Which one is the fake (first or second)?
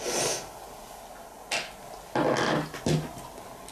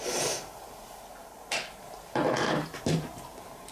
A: second